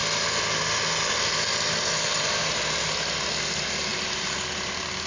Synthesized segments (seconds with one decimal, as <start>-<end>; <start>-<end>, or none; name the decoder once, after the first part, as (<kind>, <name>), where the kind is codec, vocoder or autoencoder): none